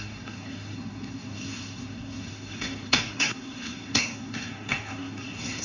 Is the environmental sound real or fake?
fake